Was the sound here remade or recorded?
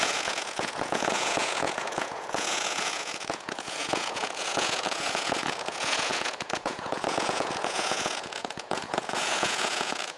remade